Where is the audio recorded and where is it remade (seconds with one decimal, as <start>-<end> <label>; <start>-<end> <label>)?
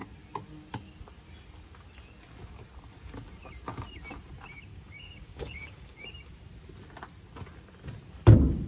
0.0-4.7 recorded; 4.7-6.1 remade; 6.1-8.7 recorded